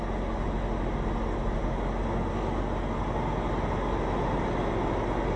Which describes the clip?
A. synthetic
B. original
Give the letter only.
B